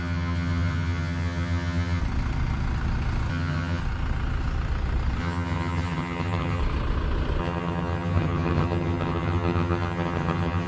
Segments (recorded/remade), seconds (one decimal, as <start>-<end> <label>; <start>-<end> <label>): 0.0-2.0 remade; 2.0-3.3 recorded; 3.3-3.8 remade; 3.8-5.2 recorded; 5.2-6.6 remade; 6.6-7.4 recorded; 7.4-10.7 remade